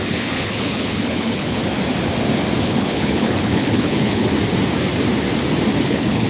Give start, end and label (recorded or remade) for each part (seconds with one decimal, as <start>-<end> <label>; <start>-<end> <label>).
0.0-1.6 remade; 1.6-2.6 recorded; 2.6-4.3 remade; 4.3-5.8 recorded; 5.8-6.3 remade